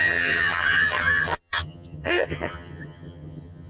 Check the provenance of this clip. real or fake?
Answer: fake